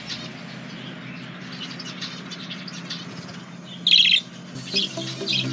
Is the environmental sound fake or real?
real